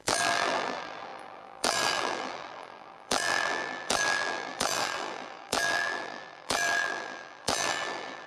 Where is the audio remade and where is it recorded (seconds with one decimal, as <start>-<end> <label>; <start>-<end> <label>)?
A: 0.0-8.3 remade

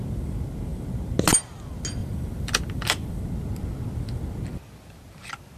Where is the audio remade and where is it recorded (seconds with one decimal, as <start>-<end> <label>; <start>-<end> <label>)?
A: 0.0-2.0 recorded; 2.0-3.2 remade; 3.2-5.6 recorded

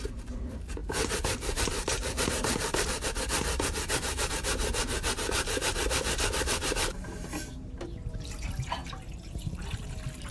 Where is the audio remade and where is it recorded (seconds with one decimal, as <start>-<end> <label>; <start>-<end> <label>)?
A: 0.0-8.8 remade; 8.8-9.3 recorded; 9.3-10.3 remade

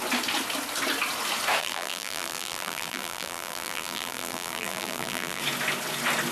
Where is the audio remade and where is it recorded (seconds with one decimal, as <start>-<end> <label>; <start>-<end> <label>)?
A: 0.0-1.6 recorded; 1.6-5.4 remade; 5.4-6.3 recorded